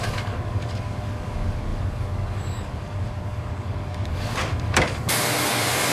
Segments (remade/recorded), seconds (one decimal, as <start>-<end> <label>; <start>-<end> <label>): 0.0-5.9 remade